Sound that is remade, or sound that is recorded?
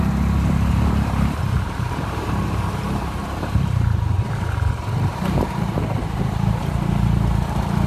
remade